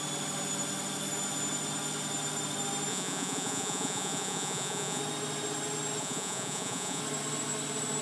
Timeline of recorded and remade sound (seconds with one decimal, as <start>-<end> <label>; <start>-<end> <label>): 0.0-2.9 recorded; 2.9-5.0 remade; 5.0-6.0 recorded; 6.0-7.0 remade; 7.0-8.0 recorded